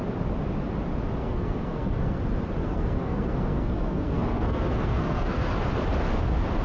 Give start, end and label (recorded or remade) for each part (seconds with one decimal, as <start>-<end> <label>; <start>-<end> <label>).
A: 0.0-1.2 recorded; 1.2-2.2 remade; 2.2-2.6 recorded; 2.6-5.5 remade; 5.5-6.6 recorded

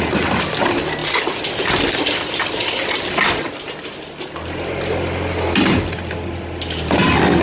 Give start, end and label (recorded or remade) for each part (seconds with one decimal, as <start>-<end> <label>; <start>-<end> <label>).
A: 0.0-7.4 recorded